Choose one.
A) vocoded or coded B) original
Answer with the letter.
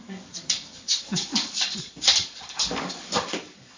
A